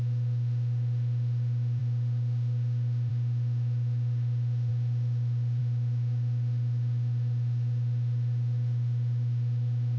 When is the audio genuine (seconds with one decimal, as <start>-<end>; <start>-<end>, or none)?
none